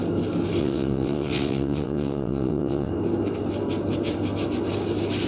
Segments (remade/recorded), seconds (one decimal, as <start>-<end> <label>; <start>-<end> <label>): 0.0-0.6 recorded; 0.6-2.9 remade; 2.9-5.3 recorded

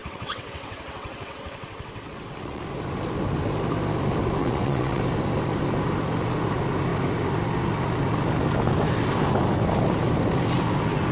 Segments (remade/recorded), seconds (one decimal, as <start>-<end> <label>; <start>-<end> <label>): 0.0-2.6 remade; 2.6-4.4 recorded; 4.4-5.0 remade; 5.0-11.1 recorded

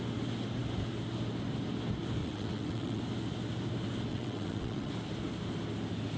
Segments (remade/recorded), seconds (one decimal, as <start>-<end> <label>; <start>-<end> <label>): 0.0-2.2 recorded; 2.2-3.0 remade; 3.0-4.1 recorded; 4.1-4.9 remade; 4.9-6.2 recorded

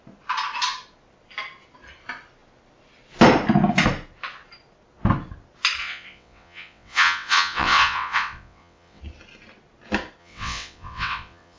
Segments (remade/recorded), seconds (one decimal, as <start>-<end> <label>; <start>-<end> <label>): 0.0-5.8 recorded; 5.8-9.0 remade; 9.0-10.2 recorded; 10.2-11.6 remade

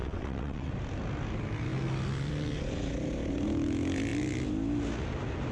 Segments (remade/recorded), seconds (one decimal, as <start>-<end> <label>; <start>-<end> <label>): 0.0-0.7 remade; 0.7-5.5 recorded

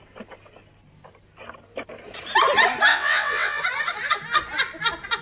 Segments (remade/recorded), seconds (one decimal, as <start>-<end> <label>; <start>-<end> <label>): 0.0-2.9 recorded; 2.9-3.6 remade; 3.6-5.2 recorded

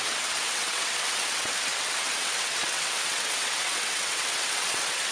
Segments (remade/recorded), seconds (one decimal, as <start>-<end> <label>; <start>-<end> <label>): 0.0-5.1 remade